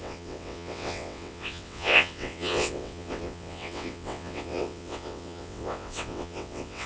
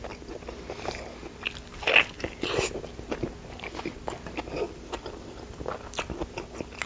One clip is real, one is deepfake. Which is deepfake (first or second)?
first